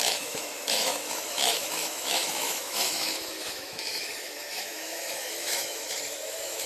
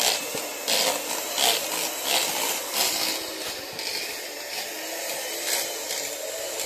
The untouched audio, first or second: second